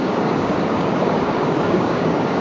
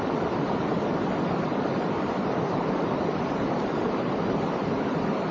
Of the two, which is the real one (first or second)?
second